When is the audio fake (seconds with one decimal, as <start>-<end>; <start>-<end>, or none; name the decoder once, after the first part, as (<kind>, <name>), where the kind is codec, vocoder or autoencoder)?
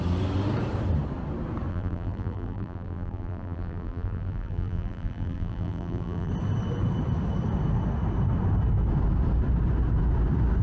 1.7-6.3 (vocoder, BigVGAN v2)